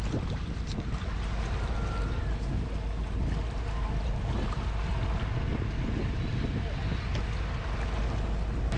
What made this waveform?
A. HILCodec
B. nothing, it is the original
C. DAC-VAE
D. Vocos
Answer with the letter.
B